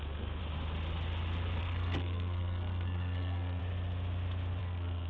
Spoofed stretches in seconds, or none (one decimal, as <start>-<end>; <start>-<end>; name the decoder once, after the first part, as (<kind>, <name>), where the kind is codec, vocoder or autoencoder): 0.0-0.4 (codec, SNAC); 1.6-3.6; 4.6-5.1